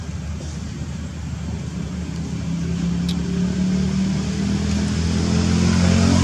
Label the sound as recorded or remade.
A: recorded